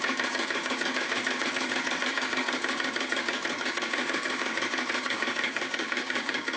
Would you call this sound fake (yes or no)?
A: yes